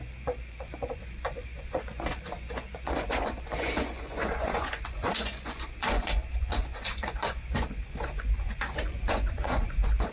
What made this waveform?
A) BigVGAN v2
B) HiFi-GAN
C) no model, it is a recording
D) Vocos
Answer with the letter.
D